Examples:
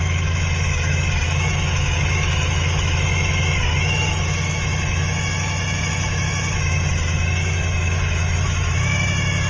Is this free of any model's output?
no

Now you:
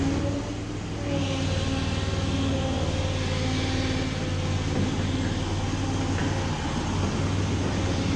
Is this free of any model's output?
yes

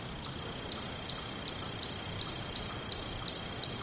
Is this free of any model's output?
yes